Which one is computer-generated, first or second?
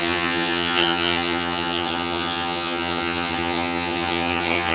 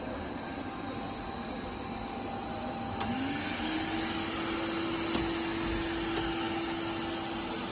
first